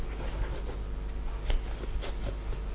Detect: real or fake real